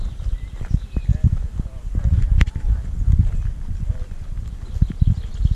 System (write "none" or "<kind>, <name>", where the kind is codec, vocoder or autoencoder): vocoder, BigVGAN v2